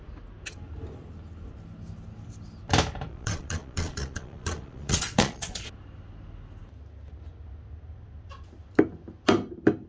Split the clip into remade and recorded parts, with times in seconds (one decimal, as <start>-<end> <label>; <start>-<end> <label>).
0.0-3.1 recorded; 3.1-5.7 remade; 5.7-9.9 recorded